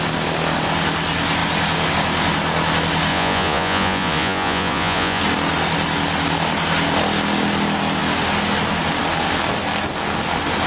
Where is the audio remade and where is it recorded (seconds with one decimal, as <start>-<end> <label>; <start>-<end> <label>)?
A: 0.0-3.1 recorded; 3.1-5.2 remade; 5.2-10.7 recorded